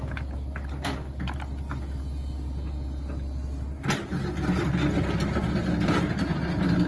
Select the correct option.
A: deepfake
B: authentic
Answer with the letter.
B